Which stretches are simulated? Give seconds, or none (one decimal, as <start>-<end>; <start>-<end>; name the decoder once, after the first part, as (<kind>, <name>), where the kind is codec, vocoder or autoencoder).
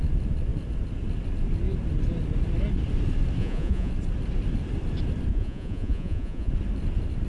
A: 3.4-3.9 (vocoder, Vocos); 5.3-6.5